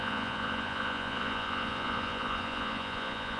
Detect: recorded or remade remade